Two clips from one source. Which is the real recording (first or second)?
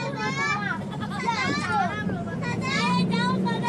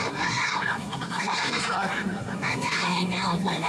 first